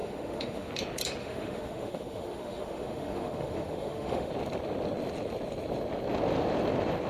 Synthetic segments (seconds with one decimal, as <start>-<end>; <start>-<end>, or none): 0.0-0.7; 1.2-4.3